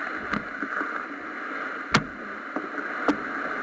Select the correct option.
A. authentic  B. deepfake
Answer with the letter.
A